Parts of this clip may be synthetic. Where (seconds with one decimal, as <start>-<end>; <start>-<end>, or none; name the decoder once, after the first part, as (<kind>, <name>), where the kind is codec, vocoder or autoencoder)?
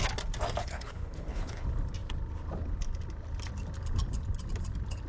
0.6-1.6 (codec, HILCodec)